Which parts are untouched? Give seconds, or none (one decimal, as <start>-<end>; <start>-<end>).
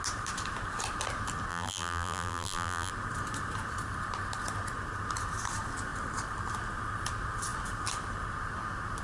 0.0-1.5; 2.9-9.0